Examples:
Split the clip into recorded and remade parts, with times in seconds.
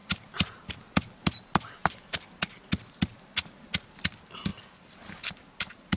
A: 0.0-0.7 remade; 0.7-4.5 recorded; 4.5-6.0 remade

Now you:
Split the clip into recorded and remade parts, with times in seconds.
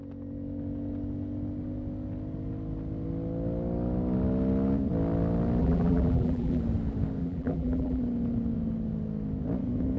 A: 0.0-5.6 recorded; 5.6-6.6 remade; 6.6-7.2 recorded; 7.2-8.0 remade; 8.0-10.0 recorded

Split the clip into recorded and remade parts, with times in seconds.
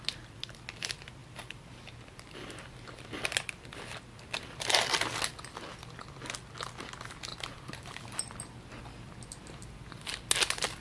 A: 0.0-7.3 recorded; 7.3-8.0 remade; 8.0-10.8 recorded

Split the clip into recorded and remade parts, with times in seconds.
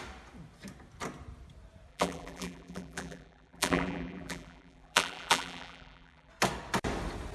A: 0.0-1.9 recorded; 1.9-6.3 remade; 6.3-7.3 recorded